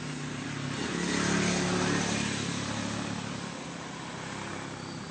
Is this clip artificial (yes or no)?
no